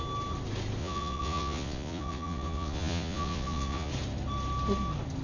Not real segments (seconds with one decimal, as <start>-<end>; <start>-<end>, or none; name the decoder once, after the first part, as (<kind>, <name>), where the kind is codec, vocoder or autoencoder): 0.8-3.9 (vocoder, Vocos)